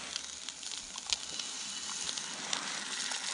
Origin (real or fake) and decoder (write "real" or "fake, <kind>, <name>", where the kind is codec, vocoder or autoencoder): real